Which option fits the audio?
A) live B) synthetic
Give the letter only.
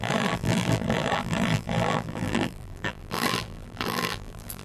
B